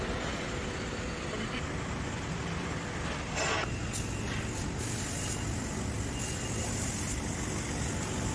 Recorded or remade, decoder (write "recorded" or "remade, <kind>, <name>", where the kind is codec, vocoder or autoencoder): recorded